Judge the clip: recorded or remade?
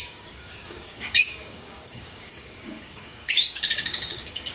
remade